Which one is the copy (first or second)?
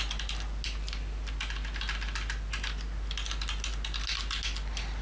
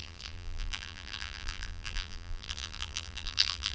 second